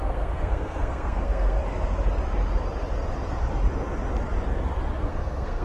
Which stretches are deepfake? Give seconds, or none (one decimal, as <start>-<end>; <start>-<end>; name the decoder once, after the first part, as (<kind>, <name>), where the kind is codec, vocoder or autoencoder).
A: 0.0-1.6 (codec, SNAC); 5.0-5.6